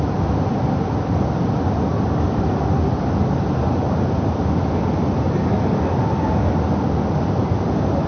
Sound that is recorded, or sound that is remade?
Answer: recorded